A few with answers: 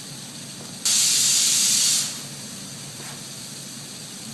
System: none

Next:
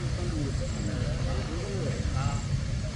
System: none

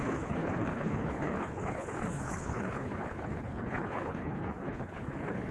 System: codec, HILCodec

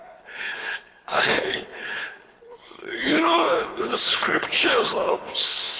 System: codec, HILCodec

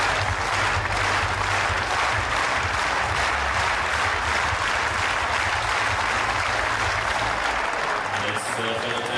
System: none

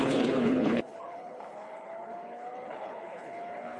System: codec, HILCodec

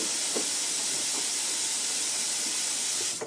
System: none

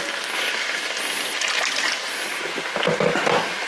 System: none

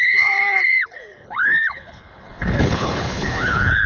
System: codec, HILCodec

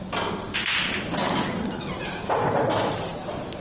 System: none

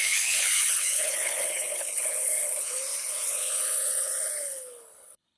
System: codec, HILCodec